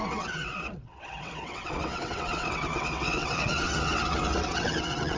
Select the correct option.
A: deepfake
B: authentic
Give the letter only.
A